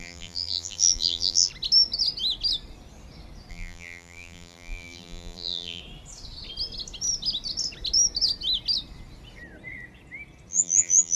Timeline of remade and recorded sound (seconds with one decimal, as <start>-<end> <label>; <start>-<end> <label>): 0.0-1.5 remade; 1.5-3.5 recorded; 3.5-5.8 remade; 5.8-10.5 recorded; 10.5-11.1 remade